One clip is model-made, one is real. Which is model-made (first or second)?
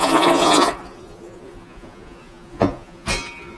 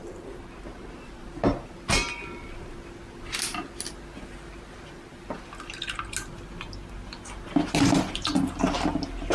first